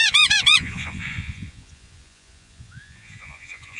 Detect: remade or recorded remade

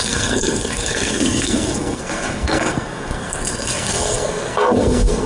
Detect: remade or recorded remade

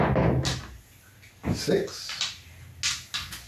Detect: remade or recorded recorded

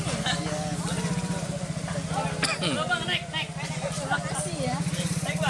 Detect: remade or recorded recorded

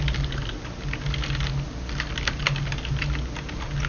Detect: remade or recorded recorded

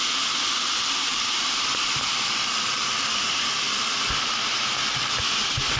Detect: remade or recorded remade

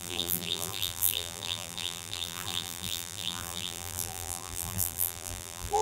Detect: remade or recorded remade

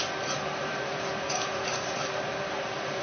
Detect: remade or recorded remade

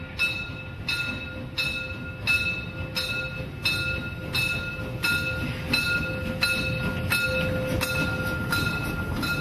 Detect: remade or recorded recorded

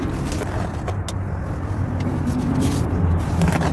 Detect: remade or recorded recorded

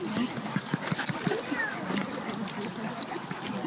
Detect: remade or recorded recorded